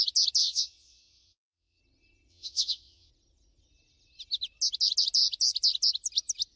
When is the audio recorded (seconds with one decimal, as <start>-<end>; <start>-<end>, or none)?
0.0-0.4; 1.8-2.3; 3.1-6.6